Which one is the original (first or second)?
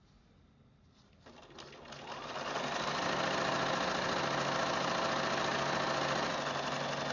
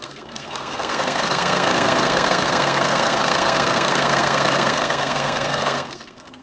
first